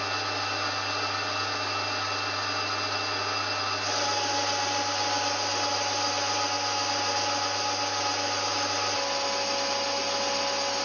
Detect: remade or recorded recorded